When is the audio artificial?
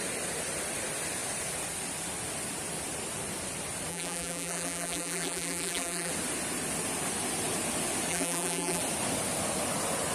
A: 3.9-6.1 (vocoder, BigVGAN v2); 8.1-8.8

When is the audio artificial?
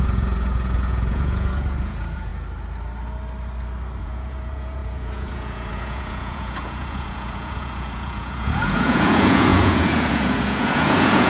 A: 0.0-2.3 (vocoder, Vocos); 4.0-11.3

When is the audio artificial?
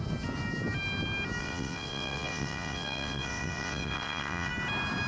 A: 1.4-4.5 (vocoder, WaveNeXt)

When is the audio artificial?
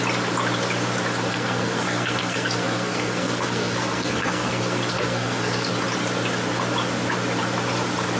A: 1.3-5.7 (codec, SNAC)